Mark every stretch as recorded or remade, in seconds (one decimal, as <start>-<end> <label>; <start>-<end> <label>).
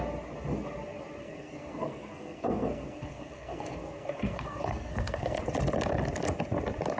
0.0-1.2 recorded; 1.2-5.4 remade; 5.4-7.0 recorded